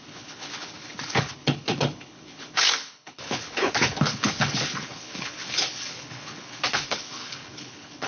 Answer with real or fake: fake